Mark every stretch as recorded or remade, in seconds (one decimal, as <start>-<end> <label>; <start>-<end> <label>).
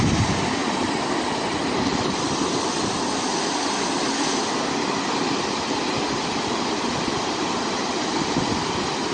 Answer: 0.0-9.1 recorded